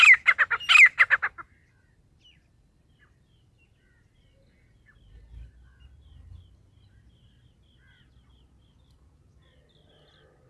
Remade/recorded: recorded